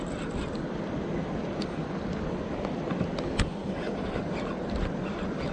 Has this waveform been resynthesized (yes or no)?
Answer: no